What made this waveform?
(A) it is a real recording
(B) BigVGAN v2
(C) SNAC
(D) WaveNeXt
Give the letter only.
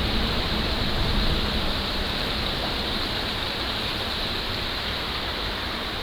B